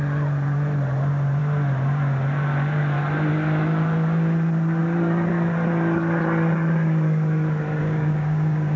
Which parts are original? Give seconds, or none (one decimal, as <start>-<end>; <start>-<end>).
0.0-7.8